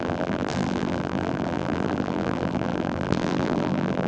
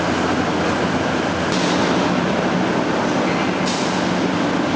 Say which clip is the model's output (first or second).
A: first